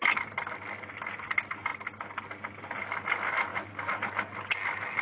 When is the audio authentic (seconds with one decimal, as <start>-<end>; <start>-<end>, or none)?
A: 0.0-5.0